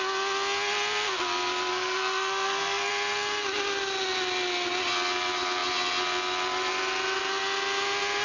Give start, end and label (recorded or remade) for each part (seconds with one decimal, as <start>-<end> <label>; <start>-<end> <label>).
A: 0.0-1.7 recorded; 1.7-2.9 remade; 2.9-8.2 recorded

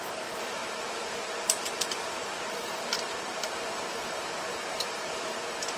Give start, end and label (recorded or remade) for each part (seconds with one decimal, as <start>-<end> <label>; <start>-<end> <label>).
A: 0.0-5.8 remade

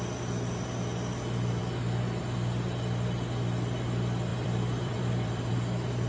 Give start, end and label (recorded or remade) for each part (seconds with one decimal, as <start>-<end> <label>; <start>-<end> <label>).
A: 0.0-4.3 recorded; 4.3-5.5 remade; 5.5-6.1 recorded

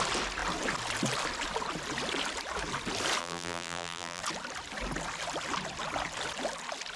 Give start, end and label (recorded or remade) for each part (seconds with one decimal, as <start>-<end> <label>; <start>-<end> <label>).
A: 0.0-3.2 recorded; 3.2-4.2 remade; 4.2-7.0 recorded

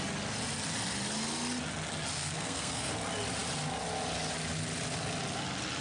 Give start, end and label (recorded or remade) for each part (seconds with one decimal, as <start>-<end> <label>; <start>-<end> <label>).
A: 0.0-2.1 recorded; 2.1-2.9 remade; 2.9-5.8 recorded

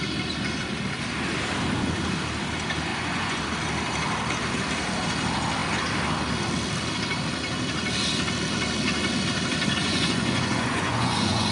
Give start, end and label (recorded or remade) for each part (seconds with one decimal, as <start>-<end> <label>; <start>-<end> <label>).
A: 0.0-2.9 recorded; 2.9-3.4 remade; 3.4-9.8 recorded; 9.8-11.5 remade